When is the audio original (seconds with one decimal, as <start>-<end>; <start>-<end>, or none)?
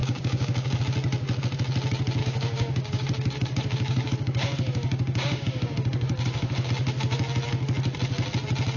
0.8-2.2; 6.7-8.8